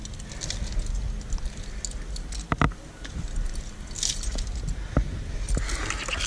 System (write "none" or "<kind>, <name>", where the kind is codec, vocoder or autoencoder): none